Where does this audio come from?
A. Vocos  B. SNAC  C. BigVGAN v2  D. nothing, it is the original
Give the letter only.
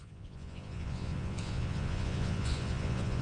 A